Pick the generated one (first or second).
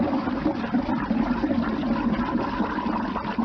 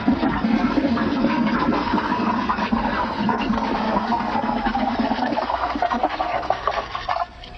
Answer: second